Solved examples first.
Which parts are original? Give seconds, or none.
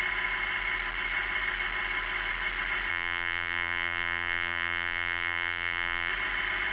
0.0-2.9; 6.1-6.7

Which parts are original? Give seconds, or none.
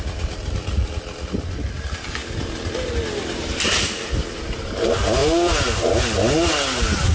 0.0-7.1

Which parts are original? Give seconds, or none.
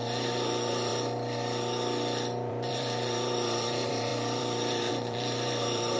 0.9-2.5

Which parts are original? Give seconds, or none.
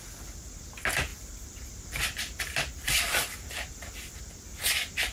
0.0-1.1; 4.2-5.1